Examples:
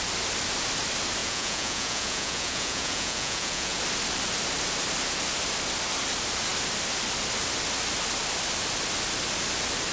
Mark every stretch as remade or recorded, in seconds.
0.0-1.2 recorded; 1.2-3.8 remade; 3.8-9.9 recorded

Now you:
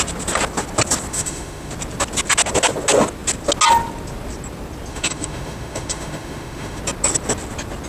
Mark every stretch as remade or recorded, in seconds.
0.0-1.1 recorded; 1.1-1.7 remade; 1.7-4.9 recorded; 4.9-6.8 remade; 6.8-7.9 recorded

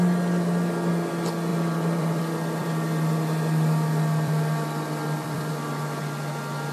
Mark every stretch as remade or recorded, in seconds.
0.0-1.5 recorded; 1.5-5.5 remade; 5.5-6.7 recorded

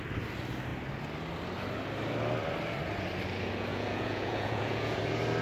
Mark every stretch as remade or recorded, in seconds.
0.0-3.7 recorded; 3.7-5.0 remade; 5.0-5.4 recorded

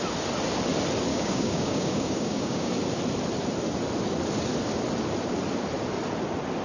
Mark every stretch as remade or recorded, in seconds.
0.0-1.1 recorded; 1.1-2.7 remade; 2.7-6.6 recorded

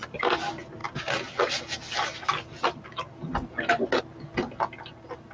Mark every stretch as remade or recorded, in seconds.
0.0-5.3 recorded